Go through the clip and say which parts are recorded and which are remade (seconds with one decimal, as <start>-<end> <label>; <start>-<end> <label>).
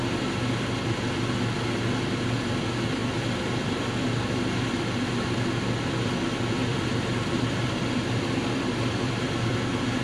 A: 0.0-6.6 recorded; 6.6-9.5 remade; 9.5-10.0 recorded